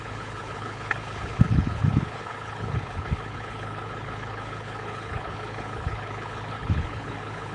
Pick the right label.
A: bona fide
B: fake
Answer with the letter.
B